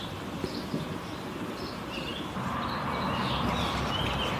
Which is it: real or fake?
real